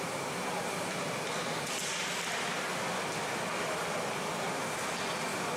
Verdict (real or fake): real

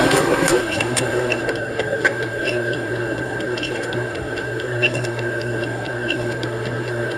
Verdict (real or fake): fake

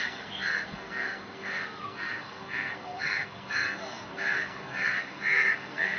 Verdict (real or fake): fake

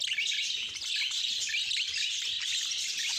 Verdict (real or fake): real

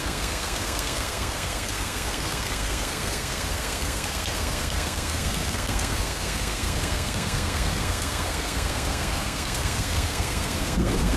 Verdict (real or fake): fake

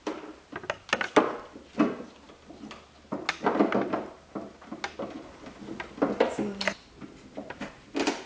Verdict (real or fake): real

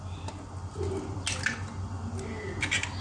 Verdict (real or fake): real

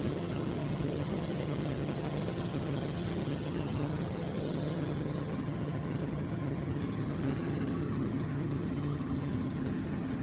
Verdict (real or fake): fake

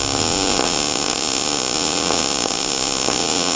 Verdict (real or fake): real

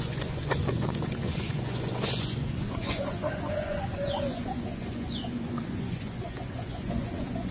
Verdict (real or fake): fake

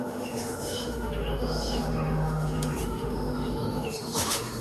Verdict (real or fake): fake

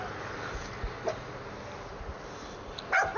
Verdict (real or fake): real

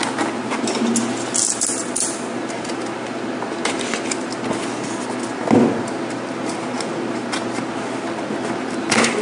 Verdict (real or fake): real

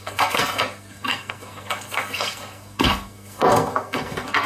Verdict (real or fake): fake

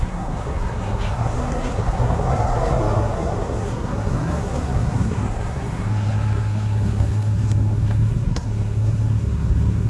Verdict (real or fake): fake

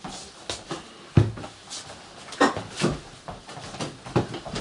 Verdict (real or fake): real